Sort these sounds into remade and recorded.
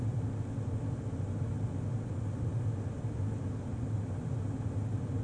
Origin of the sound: recorded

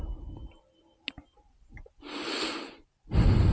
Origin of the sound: recorded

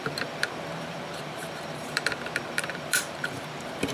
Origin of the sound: remade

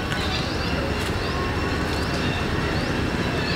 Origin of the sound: recorded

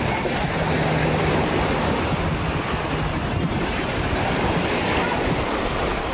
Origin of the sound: recorded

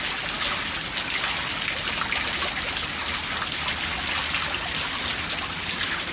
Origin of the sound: recorded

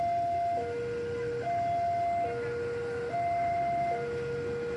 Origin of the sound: recorded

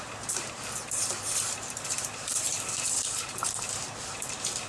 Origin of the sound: remade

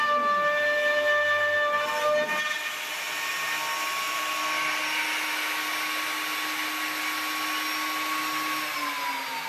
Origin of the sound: recorded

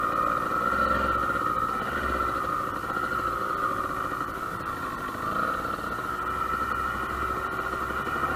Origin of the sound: recorded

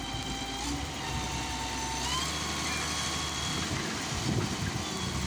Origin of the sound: recorded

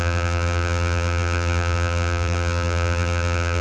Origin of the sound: remade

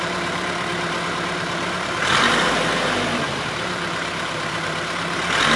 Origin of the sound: remade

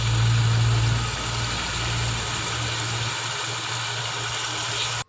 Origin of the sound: recorded